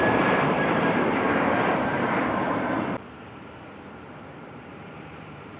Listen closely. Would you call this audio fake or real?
fake